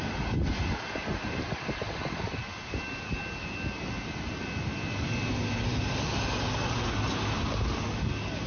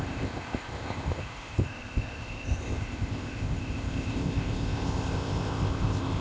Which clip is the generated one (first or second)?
second